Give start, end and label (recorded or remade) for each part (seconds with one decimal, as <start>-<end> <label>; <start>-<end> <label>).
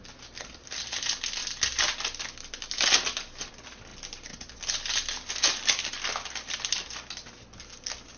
0.0-8.2 recorded